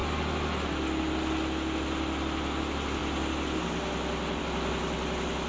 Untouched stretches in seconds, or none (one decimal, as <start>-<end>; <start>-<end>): 0.0-5.5